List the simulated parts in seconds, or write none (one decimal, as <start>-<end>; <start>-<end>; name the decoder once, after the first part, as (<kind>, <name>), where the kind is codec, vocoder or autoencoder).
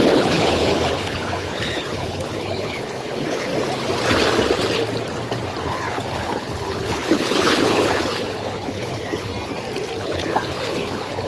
0.0-3.5 (codec, HILCodec); 5.6-9.3; 10.0-11.3